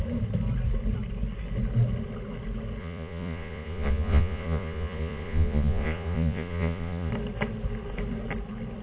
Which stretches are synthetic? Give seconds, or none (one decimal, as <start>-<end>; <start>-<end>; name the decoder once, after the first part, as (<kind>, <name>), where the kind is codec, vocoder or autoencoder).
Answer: 2.8-7.1 (vocoder, Vocos)